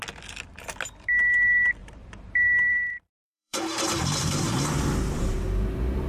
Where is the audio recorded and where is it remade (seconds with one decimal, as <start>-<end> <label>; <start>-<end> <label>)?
0.0-1.8 recorded; 1.8-4.8 remade; 4.8-6.1 recorded